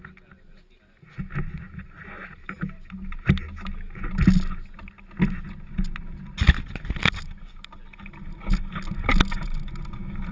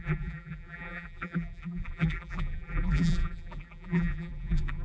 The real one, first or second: first